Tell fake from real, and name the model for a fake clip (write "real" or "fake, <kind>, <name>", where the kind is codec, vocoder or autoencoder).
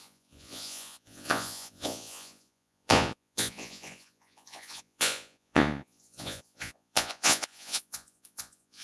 fake, vocoder, Vocos